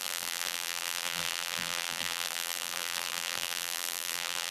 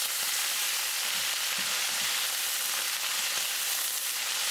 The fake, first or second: first